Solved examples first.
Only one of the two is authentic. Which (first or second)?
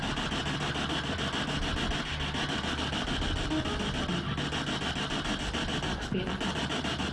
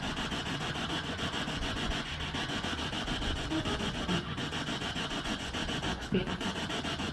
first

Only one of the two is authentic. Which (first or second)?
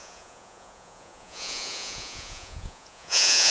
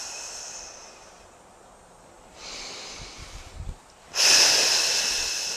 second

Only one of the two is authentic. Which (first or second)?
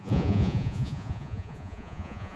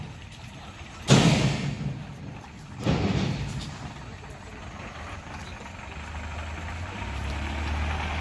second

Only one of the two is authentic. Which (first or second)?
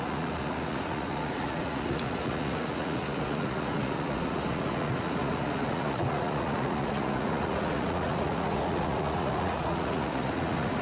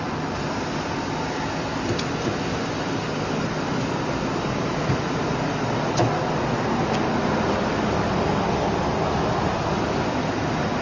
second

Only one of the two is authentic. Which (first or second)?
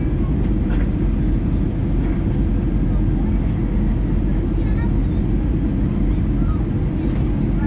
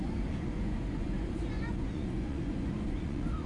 first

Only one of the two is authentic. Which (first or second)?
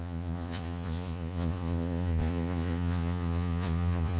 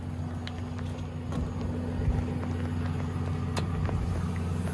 second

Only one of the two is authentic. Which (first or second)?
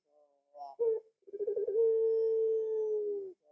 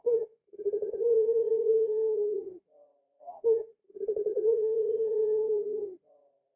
first